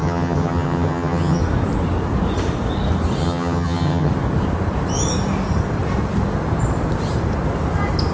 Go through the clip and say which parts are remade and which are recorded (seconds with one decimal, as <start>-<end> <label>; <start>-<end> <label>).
0.0-1.4 remade; 1.4-3.2 recorded; 3.2-4.1 remade; 4.1-8.1 recorded